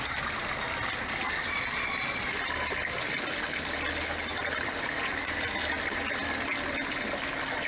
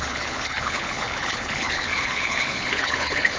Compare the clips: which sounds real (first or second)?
first